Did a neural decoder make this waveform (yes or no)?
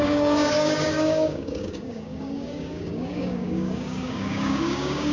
yes